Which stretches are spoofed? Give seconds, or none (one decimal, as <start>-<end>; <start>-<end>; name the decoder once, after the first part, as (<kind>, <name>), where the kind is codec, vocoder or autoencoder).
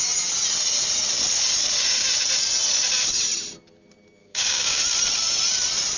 4.2-4.8 (codec, DAC)